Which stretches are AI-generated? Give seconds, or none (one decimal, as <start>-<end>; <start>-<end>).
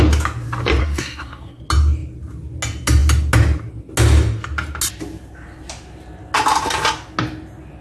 0.8-1.6